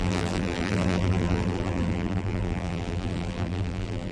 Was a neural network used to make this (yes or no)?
yes